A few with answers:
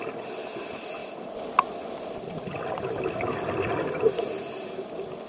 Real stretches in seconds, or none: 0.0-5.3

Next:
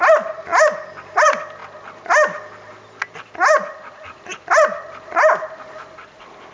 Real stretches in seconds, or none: 0.0-6.5

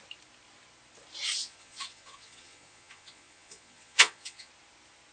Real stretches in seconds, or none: 0.0-1.4; 4.5-5.1

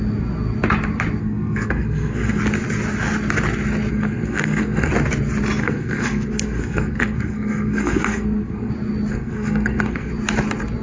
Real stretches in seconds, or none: 0.0-1.2; 2.4-3.9; 4.9-5.6; 8.7-9.1; 10.1-10.8